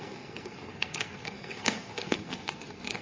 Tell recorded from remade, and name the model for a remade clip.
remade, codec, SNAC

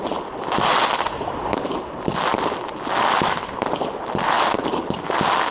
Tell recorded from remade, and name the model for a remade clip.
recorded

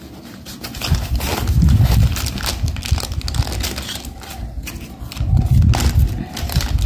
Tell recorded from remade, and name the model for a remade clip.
recorded